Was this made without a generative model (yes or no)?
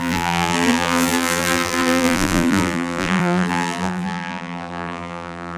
no